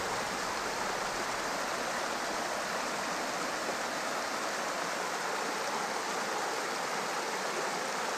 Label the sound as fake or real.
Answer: real